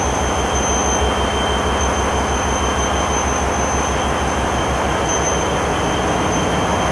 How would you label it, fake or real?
real